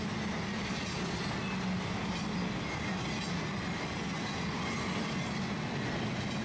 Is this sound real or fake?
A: real